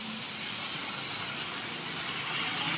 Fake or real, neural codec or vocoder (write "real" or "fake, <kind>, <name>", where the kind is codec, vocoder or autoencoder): real